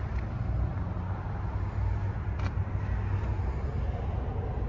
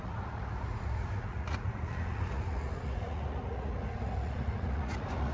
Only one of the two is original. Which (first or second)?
first